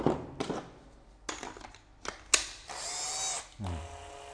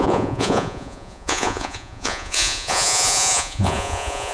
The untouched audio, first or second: first